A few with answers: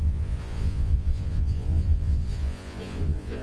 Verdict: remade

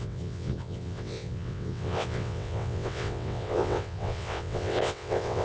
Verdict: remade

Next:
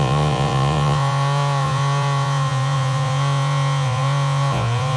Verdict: remade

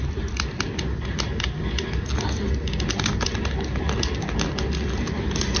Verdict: recorded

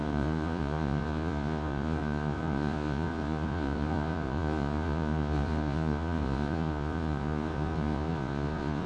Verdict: remade